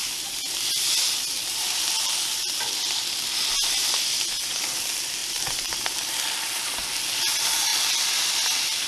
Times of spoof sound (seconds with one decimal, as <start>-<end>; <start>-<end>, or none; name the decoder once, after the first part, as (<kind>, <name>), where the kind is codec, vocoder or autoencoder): 0.0-3.3 (vocoder, BigVGAN v2); 5.2-6.1; 7.7-8.3